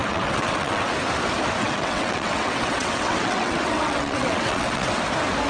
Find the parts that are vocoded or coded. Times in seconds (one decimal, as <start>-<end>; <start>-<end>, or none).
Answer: 0.0-0.9; 1.6-4.9